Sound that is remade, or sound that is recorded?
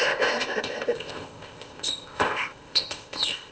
remade